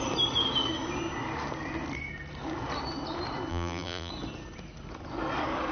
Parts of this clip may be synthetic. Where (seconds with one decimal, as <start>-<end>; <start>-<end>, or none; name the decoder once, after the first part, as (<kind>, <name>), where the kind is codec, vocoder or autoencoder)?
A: 3.5-4.1 (vocoder, BigVGAN v2)